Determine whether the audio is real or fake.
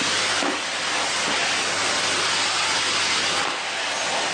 real